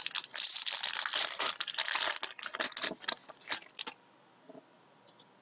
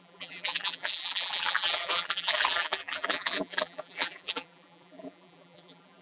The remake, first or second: second